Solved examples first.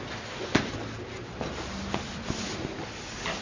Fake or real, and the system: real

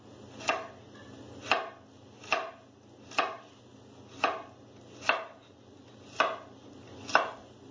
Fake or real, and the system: real